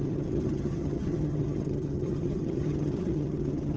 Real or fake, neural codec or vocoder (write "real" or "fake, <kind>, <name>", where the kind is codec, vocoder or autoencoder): fake, vocoder, HiFi-GAN